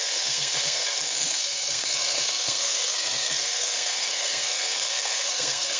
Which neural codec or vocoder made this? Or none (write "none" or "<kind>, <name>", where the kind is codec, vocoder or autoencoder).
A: codec, SNAC